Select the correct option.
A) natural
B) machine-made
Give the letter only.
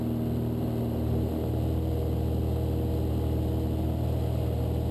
A